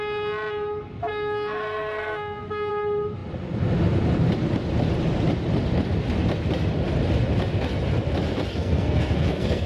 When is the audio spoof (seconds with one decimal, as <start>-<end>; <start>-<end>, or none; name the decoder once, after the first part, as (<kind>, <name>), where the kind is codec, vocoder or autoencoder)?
1.1-2.7 (codec, SNAC); 8.5-9.7